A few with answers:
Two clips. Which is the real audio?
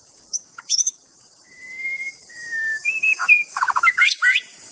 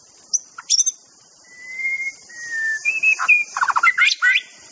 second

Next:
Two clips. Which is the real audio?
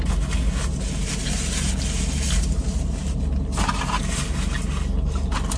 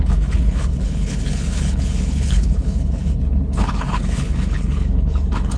first